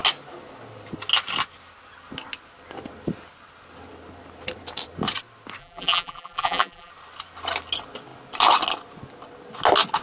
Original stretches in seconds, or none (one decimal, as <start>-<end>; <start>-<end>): 0.0-5.6; 6.9-10.0